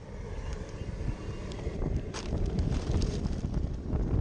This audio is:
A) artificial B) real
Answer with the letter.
B